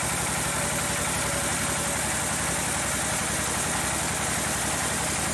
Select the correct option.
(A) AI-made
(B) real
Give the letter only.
B